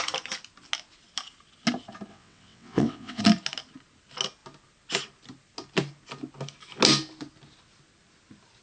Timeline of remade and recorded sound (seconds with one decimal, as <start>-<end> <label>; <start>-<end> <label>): 0.0-2.1 recorded; 2.1-3.2 remade; 3.2-8.6 recorded